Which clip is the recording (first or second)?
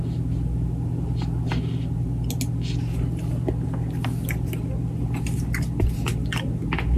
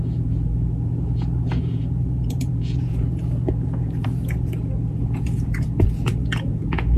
first